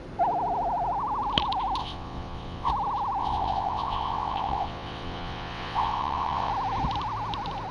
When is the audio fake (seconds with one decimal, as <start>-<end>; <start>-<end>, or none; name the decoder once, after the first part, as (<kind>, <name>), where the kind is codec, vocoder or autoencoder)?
1.8-2.7 (vocoder, WaveNeXt); 3.2-6.5